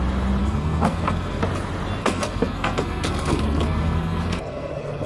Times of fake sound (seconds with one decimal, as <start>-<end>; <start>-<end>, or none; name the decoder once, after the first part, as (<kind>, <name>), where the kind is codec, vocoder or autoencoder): 0.4-1.4 (codec, SNAC); 2.0-5.1